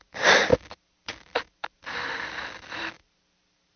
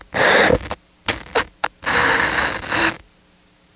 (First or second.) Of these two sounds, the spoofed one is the first